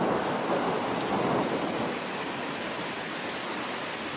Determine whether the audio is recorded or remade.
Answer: recorded